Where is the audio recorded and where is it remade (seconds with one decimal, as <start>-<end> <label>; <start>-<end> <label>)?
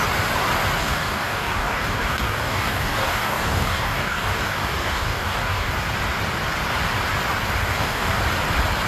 0.0-0.8 recorded; 0.8-5.7 remade; 5.7-7.7 recorded; 7.7-8.2 remade; 8.2-8.9 recorded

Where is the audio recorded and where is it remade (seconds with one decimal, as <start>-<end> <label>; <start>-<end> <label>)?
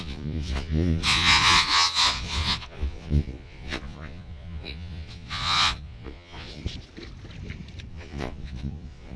0.0-6.6 remade; 6.6-7.9 recorded; 7.9-9.2 remade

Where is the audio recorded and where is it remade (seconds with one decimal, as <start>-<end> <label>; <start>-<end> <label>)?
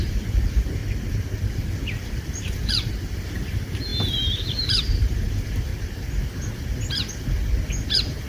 0.0-0.8 remade; 0.8-1.5 recorded; 1.5-5.7 remade; 5.7-8.3 recorded